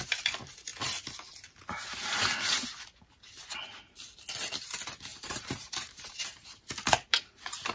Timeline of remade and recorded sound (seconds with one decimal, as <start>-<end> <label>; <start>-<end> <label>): 0.0-5.1 recorded; 5.1-7.2 remade; 7.2-7.7 recorded